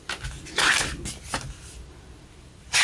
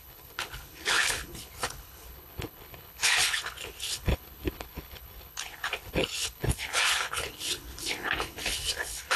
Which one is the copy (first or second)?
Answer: second